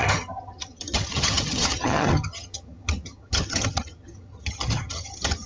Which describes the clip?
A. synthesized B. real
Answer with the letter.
A